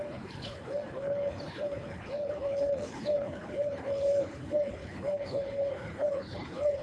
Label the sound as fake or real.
fake